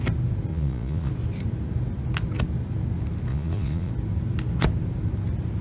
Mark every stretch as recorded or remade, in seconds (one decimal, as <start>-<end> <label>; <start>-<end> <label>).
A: 0.0-0.5 recorded; 0.5-1.1 remade; 1.1-3.3 recorded; 3.3-3.9 remade; 3.9-5.6 recorded